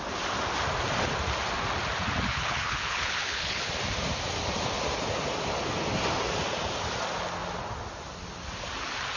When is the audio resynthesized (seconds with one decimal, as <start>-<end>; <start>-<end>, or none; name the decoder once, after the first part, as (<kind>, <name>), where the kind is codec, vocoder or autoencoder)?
2.3-3.7 (codec, HILCodec)